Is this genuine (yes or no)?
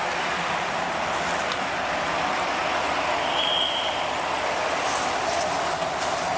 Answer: yes